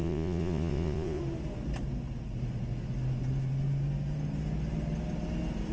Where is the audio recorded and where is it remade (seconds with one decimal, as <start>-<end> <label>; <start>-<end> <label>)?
0.0-1.2 remade; 1.2-5.7 recorded